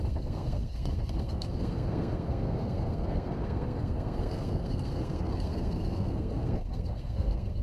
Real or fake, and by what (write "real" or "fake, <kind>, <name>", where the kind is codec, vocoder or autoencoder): fake, codec, SNAC